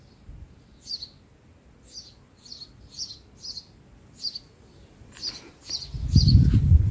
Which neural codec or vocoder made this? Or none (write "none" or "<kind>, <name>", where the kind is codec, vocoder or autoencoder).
none